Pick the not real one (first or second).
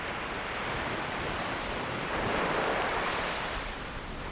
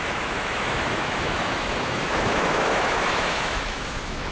second